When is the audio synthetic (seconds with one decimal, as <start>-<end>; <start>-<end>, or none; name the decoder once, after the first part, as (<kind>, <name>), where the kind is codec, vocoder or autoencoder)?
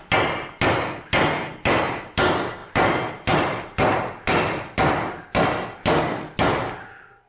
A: none